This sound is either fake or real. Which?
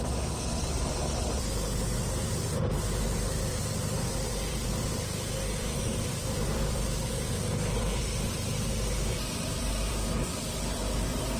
fake